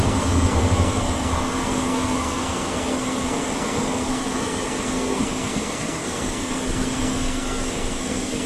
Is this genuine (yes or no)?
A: no